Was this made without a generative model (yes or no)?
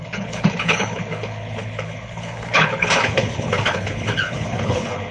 no